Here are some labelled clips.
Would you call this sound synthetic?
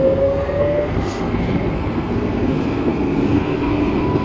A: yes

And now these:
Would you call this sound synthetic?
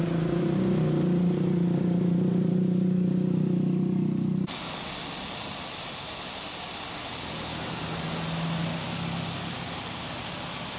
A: no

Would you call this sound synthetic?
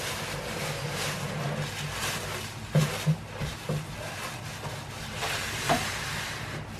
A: no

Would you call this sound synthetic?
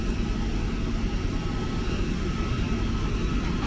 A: no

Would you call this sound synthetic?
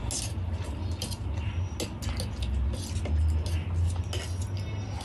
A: no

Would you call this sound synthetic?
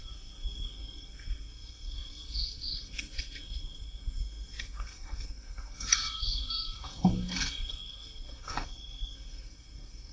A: yes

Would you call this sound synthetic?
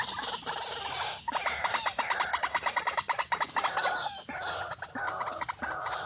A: no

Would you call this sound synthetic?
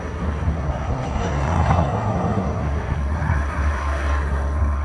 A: yes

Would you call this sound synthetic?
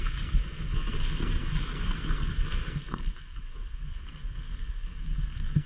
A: yes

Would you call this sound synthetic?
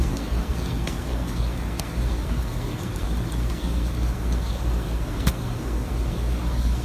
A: yes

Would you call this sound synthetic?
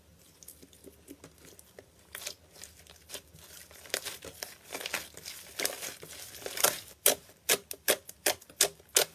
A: no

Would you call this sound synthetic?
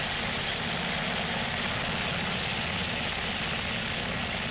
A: no